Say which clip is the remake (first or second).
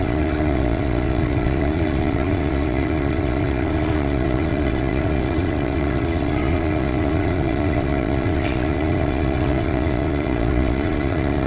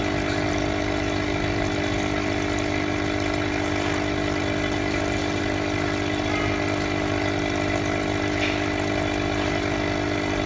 first